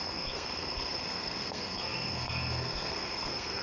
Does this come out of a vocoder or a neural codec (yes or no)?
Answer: yes